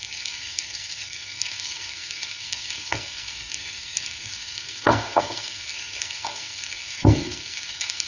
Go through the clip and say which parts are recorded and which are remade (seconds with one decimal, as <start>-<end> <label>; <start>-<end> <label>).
0.0-8.1 remade